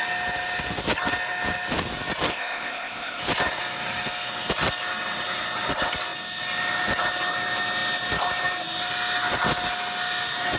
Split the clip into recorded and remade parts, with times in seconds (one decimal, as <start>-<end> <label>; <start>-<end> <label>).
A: 0.0-2.3 recorded; 2.3-3.2 remade; 3.2-10.6 recorded